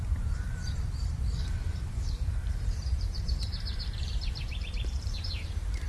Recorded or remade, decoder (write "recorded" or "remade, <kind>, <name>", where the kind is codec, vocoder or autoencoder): remade, vocoder, BigVGAN v2